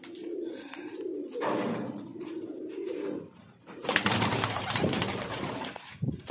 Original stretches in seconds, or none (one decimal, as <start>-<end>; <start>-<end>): none